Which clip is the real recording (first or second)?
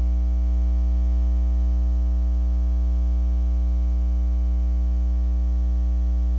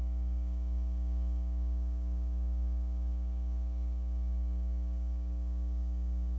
first